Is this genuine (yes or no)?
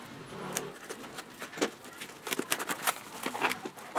yes